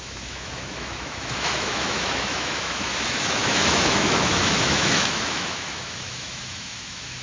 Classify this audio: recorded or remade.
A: remade